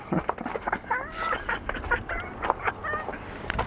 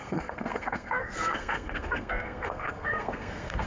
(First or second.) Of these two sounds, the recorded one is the first